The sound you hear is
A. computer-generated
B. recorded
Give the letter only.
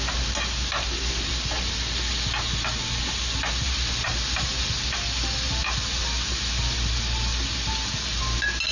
B